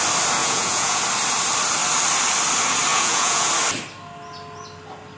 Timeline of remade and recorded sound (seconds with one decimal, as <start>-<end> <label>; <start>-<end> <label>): 0.0-0.4 recorded; 0.4-1.0 remade; 1.0-2.9 recorded; 2.9-3.5 remade; 3.5-5.2 recorded